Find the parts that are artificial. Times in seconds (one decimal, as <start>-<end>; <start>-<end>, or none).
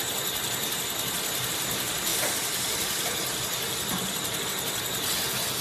none